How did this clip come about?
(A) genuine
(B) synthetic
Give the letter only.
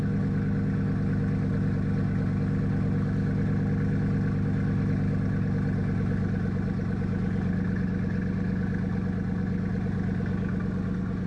A